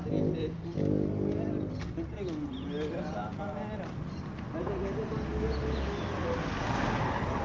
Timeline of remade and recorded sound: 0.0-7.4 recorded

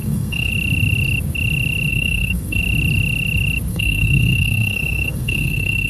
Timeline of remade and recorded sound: 0.0-0.5 remade; 0.5-1.9 recorded; 1.9-2.6 remade; 2.6-3.7 recorded; 3.7-5.9 remade

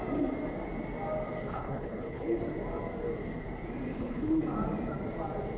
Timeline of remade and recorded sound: 0.0-1.5 recorded; 1.5-2.4 remade; 2.4-3.9 recorded; 3.9-4.4 remade; 4.4-5.6 recorded

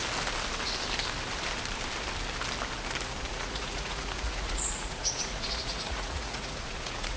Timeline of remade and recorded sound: 0.0-3.3 recorded; 3.3-7.2 remade

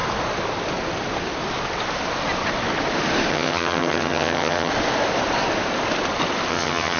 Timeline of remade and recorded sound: 0.0-3.3 recorded; 3.3-4.7 remade; 4.7-6.5 recorded; 6.5-7.0 remade

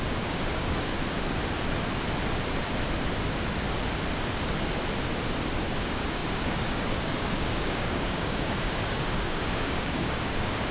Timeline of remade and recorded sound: 0.0-0.9 remade; 0.9-5.8 recorded; 5.8-10.7 remade